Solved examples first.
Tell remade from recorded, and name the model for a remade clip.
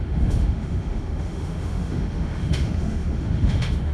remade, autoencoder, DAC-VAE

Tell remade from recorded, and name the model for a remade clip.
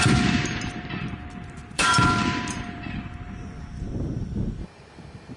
remade, vocoder, BigVGAN v2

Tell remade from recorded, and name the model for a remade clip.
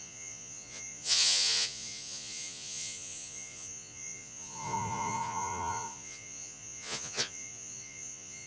remade, vocoder, Vocos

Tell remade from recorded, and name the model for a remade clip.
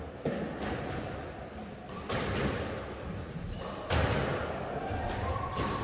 recorded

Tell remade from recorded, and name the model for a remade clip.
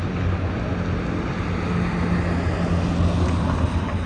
recorded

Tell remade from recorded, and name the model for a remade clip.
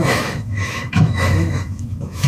remade, autoencoder, DAC-VAE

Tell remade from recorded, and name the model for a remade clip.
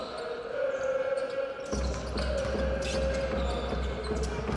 recorded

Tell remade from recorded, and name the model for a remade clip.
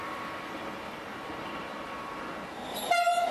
recorded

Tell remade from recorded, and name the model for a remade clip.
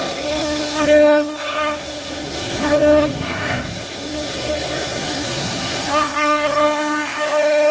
remade, codec, SNAC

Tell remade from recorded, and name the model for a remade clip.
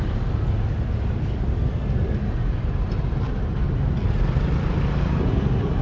recorded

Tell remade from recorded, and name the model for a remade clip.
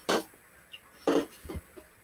recorded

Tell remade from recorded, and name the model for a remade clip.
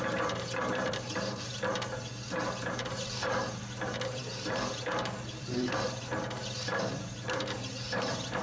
remade, vocoder, BigVGAN v2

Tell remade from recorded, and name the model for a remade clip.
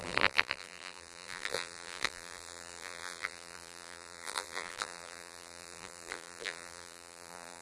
remade, vocoder, BigVGAN v2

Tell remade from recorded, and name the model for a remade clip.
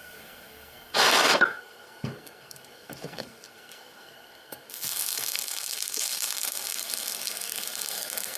remade, codec, SNAC